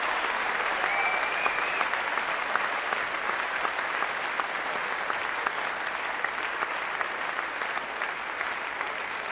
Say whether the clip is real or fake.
real